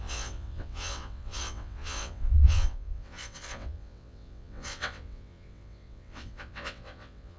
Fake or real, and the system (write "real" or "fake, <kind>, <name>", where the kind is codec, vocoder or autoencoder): fake, vocoder, WaveNeXt